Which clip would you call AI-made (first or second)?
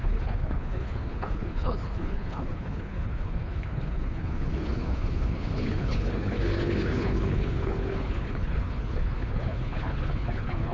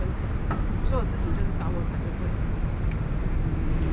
first